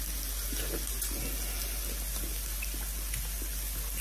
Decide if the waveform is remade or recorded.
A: recorded